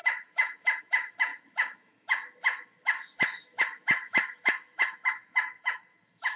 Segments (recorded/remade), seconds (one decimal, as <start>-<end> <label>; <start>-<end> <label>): 0.0-6.4 remade